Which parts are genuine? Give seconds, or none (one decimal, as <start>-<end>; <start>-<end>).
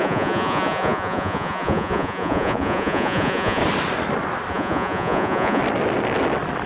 3.6-4.5; 5.6-6.7